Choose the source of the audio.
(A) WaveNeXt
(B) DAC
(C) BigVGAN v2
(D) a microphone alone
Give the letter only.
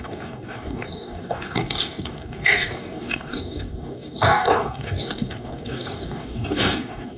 B